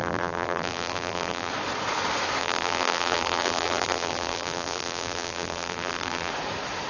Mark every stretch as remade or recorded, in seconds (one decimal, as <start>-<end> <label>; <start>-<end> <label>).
0.0-1.5 remade; 1.5-2.4 recorded; 2.4-6.3 remade; 6.3-6.9 recorded

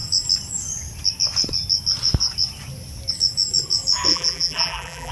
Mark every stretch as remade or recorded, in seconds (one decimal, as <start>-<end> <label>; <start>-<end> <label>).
0.0-4.1 recorded; 4.1-5.1 remade